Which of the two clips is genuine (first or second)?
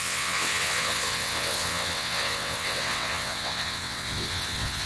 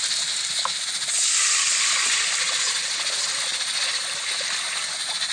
second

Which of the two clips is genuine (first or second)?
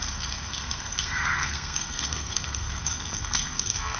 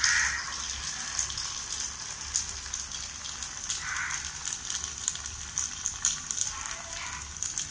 second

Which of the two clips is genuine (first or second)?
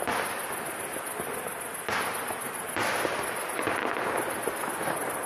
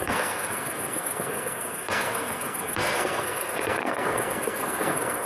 first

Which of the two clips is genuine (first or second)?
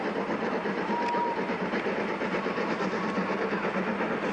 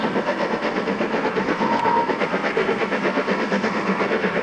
first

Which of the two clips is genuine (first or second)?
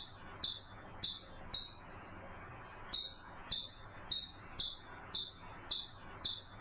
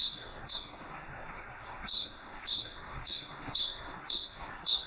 first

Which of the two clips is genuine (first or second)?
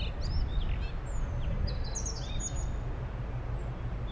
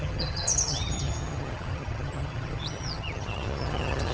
first